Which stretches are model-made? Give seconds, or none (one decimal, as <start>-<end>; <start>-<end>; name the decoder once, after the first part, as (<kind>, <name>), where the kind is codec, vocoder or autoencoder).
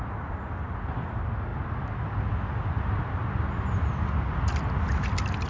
none